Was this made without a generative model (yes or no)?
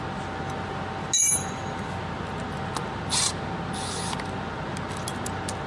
yes